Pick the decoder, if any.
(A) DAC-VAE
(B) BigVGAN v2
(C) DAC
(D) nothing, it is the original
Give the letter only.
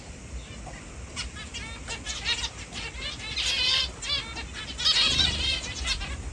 D